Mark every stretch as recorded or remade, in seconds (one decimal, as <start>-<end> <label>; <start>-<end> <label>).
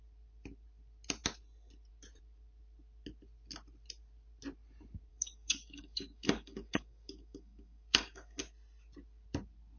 0.0-5.1 recorded; 5.1-8.4 remade; 8.4-9.8 recorded